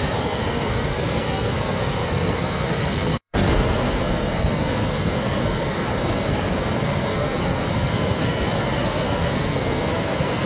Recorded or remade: remade